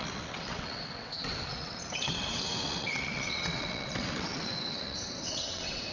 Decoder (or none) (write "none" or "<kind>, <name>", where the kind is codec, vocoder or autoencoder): vocoder, WaveNeXt